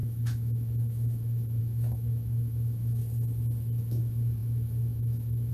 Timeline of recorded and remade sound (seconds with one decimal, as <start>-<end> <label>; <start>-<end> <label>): 0.0-3.0 remade; 3.0-3.8 recorded; 3.8-5.5 remade